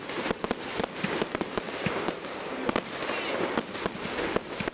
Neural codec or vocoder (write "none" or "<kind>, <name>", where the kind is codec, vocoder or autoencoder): vocoder, BigVGAN v2